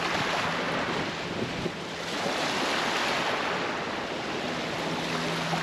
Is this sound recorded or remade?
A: recorded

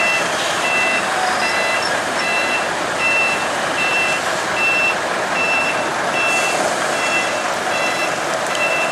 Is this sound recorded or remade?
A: remade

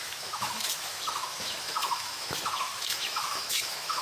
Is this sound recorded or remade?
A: remade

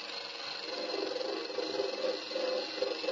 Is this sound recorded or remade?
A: recorded